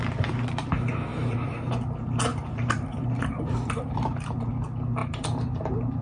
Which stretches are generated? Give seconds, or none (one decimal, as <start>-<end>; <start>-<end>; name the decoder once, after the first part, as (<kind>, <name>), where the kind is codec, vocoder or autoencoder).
1.1-1.7 (vocoder, BigVGAN v2); 2.3-4.5; 5.0-5.6